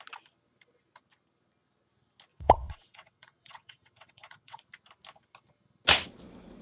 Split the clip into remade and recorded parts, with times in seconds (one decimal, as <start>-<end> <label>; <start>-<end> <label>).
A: 0.0-2.3 recorded; 2.3-4.6 remade; 4.6-6.6 recorded